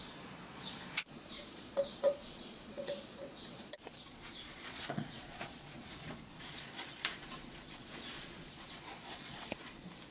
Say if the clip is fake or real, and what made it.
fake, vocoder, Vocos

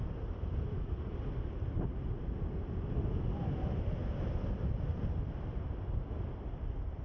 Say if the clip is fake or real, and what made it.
real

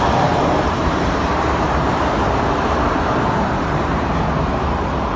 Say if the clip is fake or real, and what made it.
fake, vocoder, BigVGAN v2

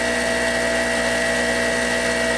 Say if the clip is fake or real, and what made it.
real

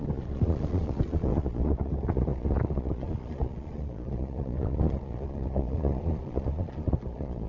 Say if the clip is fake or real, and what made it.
fake, vocoder, Vocos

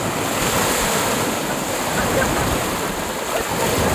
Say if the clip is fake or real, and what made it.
real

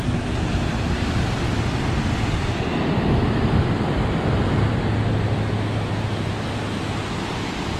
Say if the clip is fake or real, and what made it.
real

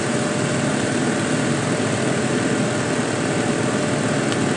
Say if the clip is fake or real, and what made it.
real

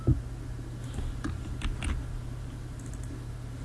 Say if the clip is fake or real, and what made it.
real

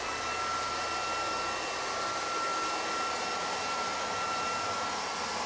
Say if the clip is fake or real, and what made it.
real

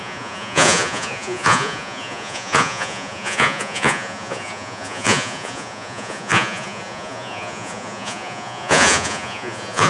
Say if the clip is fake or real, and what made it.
fake, vocoder, Vocos